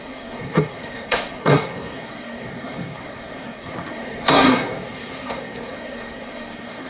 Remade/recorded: remade